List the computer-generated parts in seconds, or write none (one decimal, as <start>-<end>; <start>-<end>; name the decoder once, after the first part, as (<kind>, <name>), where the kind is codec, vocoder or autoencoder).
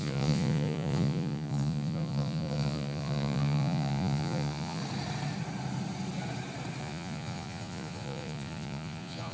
0.0-4.8 (vocoder, Vocos); 6.8-9.3